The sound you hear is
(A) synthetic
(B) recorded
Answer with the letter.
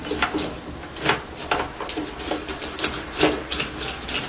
B